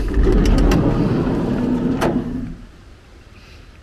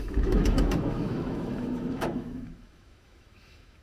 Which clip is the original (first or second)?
first